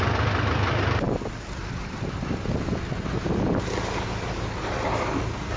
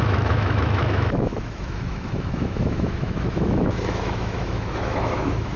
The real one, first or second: first